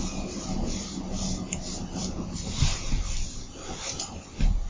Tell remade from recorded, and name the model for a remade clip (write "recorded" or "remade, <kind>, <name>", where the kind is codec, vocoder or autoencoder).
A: recorded